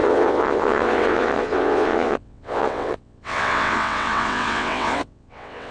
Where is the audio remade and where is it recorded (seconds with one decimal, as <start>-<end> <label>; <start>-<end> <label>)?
0.0-5.7 remade